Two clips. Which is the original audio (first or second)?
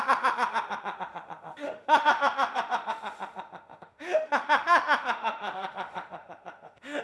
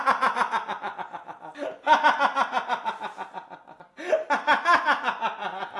second